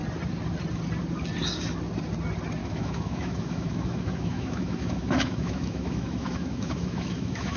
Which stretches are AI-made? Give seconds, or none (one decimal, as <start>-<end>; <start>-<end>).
2.6-7.6